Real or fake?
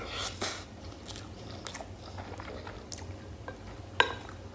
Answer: real